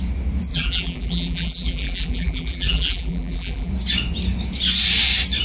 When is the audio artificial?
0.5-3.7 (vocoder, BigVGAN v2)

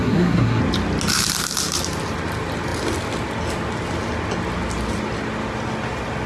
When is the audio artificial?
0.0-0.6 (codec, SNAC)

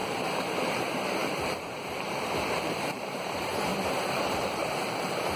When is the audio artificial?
0.0-5.4 (vocoder, BigVGAN v2)

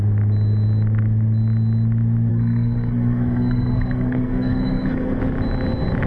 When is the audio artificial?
2.3-5.2 (codec, SNAC)

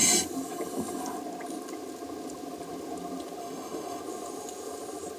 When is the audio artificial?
3.4-4.0 (autoencoder, DAC-VAE)

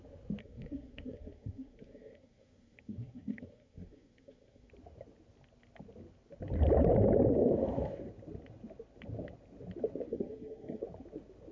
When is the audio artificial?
0.4-4.7 (codec, SNAC); 10.1-10.8

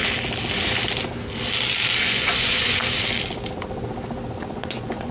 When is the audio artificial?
2.0-2.8 (vocoder, Vocos); 4.5-5.1